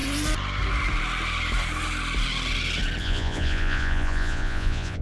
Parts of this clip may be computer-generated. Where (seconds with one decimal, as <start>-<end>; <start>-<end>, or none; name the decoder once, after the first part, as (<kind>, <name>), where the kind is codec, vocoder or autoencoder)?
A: 3.0-5.0 (vocoder, Vocos)